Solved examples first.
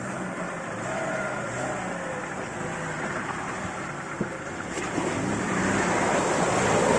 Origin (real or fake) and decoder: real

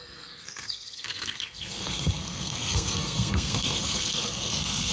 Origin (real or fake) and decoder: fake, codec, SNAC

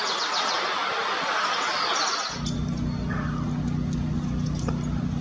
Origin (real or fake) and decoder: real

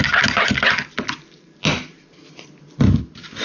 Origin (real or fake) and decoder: real